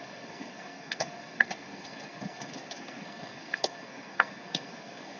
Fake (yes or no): yes